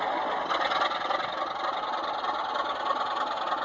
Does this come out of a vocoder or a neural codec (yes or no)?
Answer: no